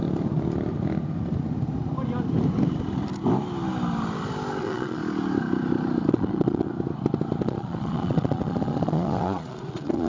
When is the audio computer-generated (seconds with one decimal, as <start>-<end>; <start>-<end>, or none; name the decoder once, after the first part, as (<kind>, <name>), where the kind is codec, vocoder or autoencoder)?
4.6-5.0 (vocoder, Vocos); 6.1-6.7; 7.4-10.1